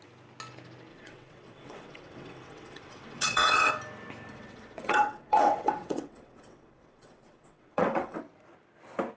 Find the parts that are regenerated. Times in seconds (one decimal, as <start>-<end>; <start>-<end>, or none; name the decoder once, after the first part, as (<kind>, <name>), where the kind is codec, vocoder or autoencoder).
0.9-3.7 (vocoder, WaveNeXt); 4.3-8.2